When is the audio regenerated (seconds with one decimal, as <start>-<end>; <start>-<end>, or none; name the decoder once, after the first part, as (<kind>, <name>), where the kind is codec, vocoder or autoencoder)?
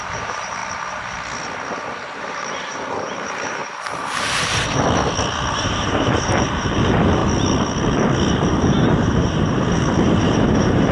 0.0-0.6 (vocoder, BigVGAN v2); 1.7-3.6; 5.6-7.2; 8.3-10.9